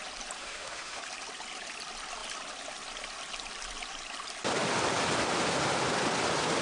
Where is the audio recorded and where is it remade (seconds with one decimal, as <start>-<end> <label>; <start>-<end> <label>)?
0.0-0.4 recorded; 0.4-1.0 remade; 1.0-6.6 recorded